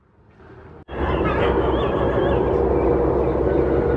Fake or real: real